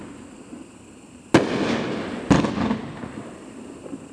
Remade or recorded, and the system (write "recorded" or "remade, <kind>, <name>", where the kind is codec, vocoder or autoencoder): recorded